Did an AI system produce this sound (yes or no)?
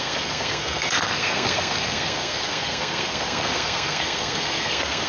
yes